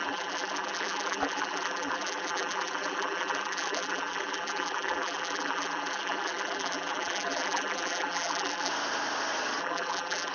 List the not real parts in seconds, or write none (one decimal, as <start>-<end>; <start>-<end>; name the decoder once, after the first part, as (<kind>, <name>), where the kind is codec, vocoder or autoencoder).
0.0-8.7 (vocoder, BigVGAN v2); 9.6-10.3